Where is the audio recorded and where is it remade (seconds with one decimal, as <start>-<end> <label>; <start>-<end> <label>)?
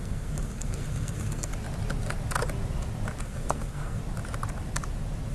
0.0-1.5 remade; 1.5-3.2 recorded; 3.2-4.0 remade; 4.0-5.3 recorded